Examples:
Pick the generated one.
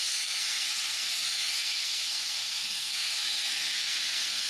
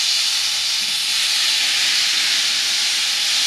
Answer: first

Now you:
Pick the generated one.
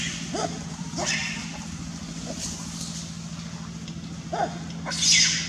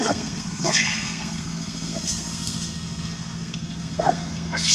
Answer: second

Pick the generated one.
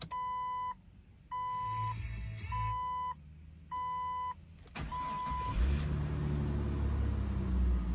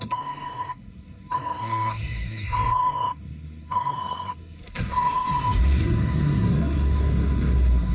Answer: second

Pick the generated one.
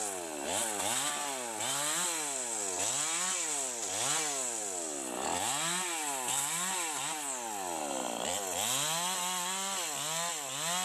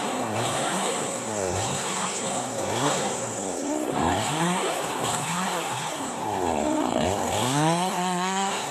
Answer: second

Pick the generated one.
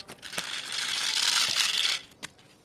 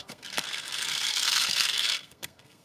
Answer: second